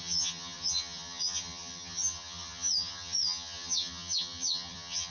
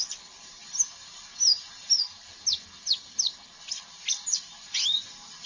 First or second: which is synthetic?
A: first